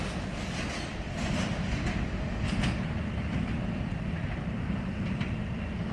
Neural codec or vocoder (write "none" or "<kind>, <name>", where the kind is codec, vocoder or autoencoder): none